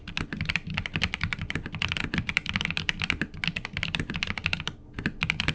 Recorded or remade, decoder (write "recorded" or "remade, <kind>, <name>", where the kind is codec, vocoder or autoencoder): recorded